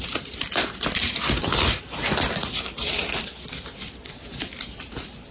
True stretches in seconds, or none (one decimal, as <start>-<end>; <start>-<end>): 1.0-3.2